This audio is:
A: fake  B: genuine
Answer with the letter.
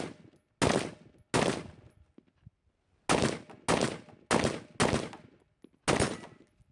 B